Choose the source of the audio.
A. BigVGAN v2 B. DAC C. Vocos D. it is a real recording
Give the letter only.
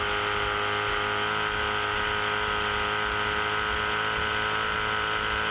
D